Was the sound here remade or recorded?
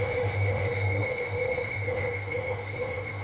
remade